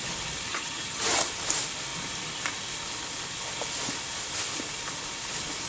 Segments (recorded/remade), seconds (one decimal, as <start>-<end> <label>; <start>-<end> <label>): 0.0-0.5 recorded; 0.5-1.3 remade; 1.3-5.7 recorded